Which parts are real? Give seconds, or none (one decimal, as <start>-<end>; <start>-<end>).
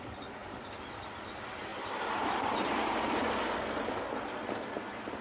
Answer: 0.0-5.2